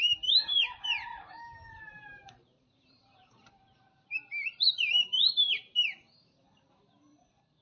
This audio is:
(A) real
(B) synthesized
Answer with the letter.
B